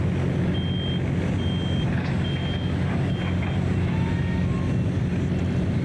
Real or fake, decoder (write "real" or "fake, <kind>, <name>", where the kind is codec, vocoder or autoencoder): real